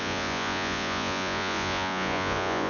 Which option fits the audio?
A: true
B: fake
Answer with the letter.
B